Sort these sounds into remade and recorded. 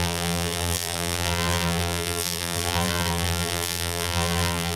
remade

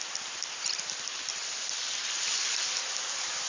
recorded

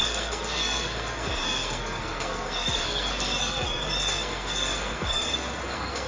remade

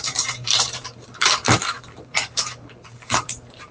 remade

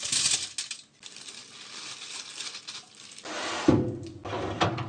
recorded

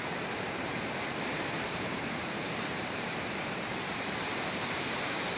remade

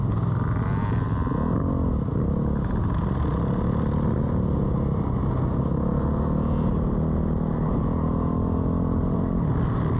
recorded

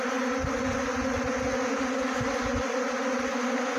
recorded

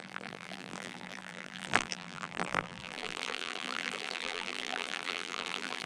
remade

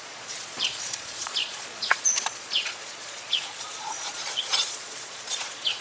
remade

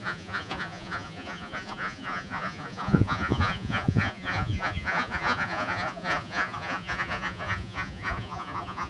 remade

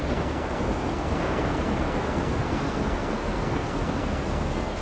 remade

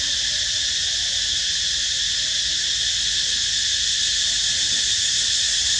recorded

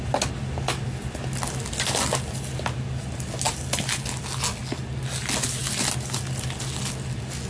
recorded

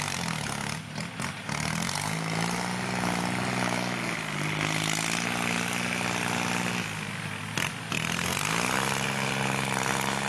recorded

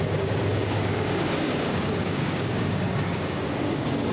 remade